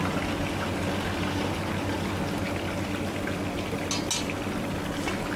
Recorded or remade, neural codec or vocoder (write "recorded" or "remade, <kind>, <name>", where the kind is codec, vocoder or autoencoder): recorded